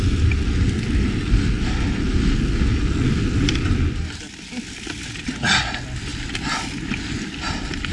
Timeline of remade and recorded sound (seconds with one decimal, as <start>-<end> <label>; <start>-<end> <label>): 0.0-7.9 recorded